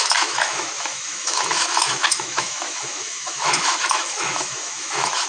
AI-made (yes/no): yes